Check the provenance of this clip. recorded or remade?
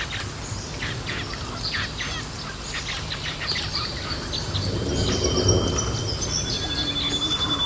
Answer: recorded